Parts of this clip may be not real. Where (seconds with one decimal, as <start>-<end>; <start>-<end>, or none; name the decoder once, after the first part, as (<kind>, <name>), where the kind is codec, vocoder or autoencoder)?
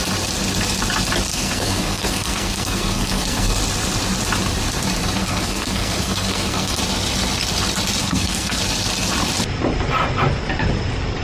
1.3-3.6 (codec, SNAC); 5.2-6.8; 8.0-8.6